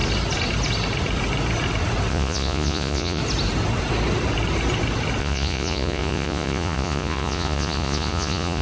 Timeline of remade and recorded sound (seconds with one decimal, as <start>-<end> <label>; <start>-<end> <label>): 0.0-2.1 recorded; 2.1-3.2 remade; 3.2-5.2 recorded; 5.2-8.6 remade